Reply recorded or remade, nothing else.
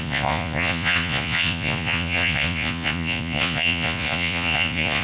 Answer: remade